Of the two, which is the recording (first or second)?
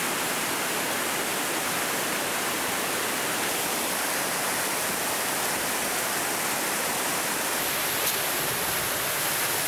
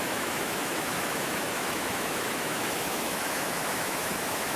first